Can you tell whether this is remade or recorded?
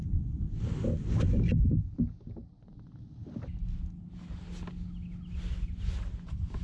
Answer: recorded